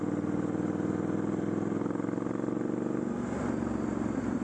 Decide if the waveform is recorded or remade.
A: recorded